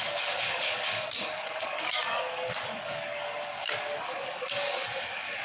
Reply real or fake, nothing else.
fake